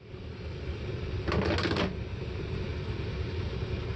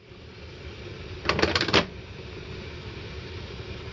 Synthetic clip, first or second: second